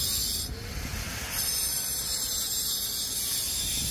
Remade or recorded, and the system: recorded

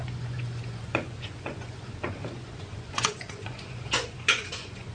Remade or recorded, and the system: remade, vocoder, Vocos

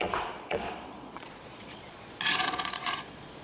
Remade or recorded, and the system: remade, vocoder, Vocos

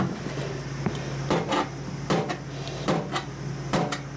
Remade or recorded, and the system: recorded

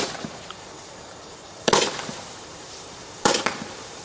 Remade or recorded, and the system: remade, vocoder, BigVGAN v2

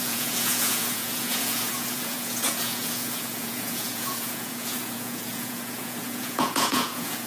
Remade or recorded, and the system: remade, vocoder, Vocos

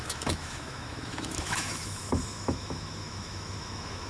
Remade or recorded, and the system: remade, autoencoder, DAC-VAE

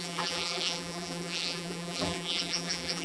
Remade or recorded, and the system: remade, vocoder, BigVGAN v2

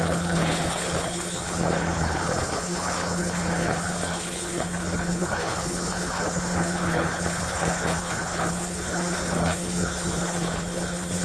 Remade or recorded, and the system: remade, codec, HILCodec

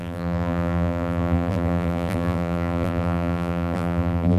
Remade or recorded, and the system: remade, vocoder, BigVGAN v2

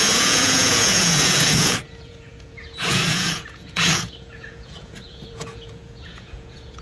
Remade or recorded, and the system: remade, vocoder, Vocos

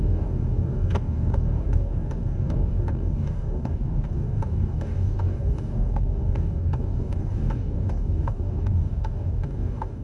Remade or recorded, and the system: remade, codec, DAC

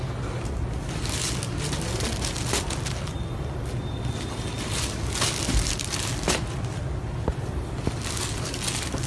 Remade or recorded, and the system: recorded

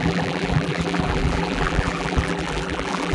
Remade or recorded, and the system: remade, vocoder, BigVGAN v2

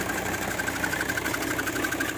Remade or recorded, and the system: recorded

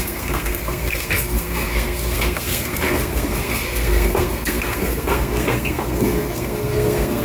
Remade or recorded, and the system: remade, codec, SNAC